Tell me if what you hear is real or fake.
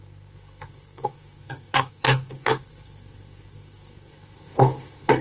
fake